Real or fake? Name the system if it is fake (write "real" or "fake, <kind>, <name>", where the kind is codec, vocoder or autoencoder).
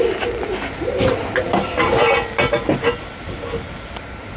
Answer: real